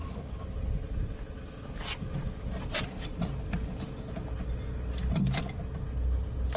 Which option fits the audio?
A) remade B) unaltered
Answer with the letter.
B